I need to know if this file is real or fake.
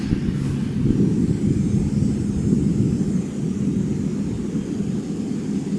real